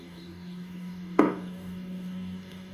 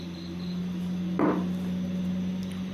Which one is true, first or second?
second